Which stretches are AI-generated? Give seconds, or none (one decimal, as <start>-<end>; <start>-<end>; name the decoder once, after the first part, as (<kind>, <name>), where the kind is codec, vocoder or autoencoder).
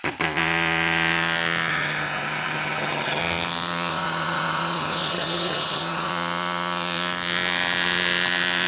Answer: 1.7-3.2 (vocoder, HiFi-GAN); 3.9-6.1